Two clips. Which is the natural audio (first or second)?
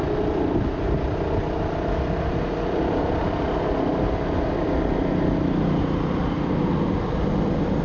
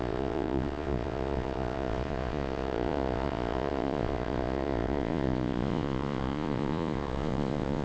first